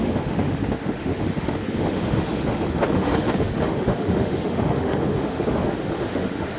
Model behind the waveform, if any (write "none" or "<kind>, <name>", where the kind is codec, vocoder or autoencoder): autoencoder, DAC-VAE